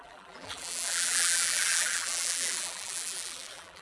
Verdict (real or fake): fake